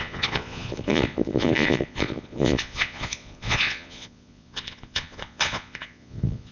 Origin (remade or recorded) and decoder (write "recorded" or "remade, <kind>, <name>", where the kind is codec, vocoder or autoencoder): remade, vocoder, Vocos